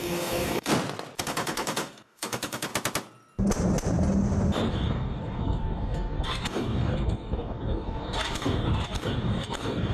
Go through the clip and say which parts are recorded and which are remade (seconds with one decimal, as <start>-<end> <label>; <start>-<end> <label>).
0.0-0.7 remade; 0.7-1.2 recorded; 1.2-2.7 remade; 2.7-4.7 recorded; 4.7-9.9 remade